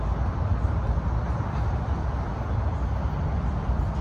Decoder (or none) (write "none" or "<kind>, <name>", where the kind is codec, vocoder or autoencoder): none